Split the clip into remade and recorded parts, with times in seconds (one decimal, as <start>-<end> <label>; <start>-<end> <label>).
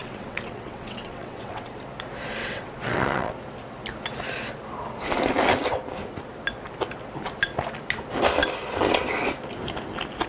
0.0-1.7 remade; 1.7-2.4 recorded; 2.4-3.3 remade; 3.3-10.3 recorded